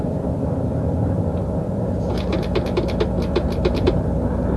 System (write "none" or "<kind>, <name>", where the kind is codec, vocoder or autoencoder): vocoder, BigVGAN v2